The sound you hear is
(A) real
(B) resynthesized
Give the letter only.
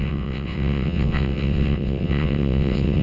B